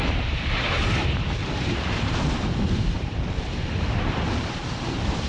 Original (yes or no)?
no